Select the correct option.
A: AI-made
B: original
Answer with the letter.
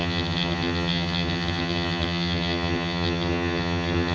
A